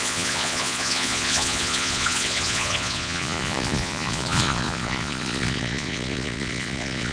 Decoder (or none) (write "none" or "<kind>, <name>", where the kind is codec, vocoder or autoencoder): vocoder, Vocos